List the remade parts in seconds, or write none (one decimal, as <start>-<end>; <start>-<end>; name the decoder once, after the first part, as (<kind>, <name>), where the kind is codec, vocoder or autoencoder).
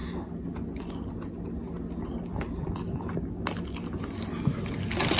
none